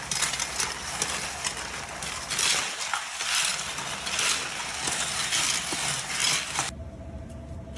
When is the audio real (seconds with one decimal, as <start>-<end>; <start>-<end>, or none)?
0.0-6.2